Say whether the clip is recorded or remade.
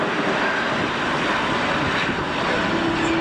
recorded